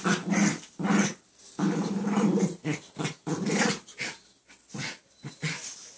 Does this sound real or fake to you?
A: real